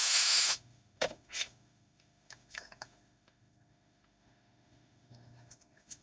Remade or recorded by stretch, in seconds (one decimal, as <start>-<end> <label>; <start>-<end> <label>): 0.0-6.0 remade